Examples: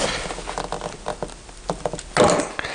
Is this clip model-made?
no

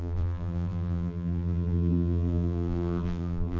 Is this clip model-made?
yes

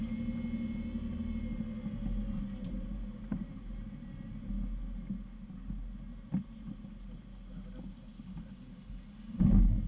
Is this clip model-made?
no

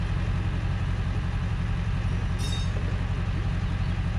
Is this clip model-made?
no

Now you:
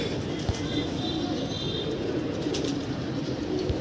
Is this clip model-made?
no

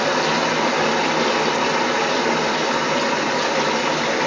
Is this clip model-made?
no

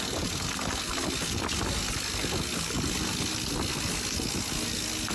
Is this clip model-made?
no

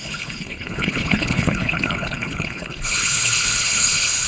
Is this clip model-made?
yes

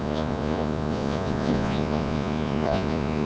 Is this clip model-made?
yes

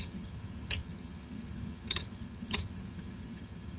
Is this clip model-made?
yes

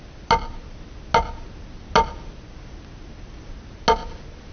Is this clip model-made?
no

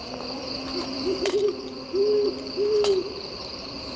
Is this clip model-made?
yes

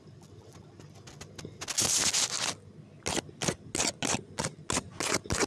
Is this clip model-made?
no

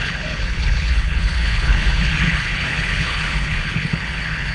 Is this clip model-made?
yes